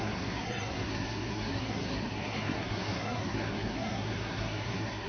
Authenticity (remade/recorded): remade